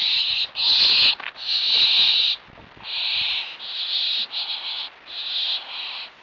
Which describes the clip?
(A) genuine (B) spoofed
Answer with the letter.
A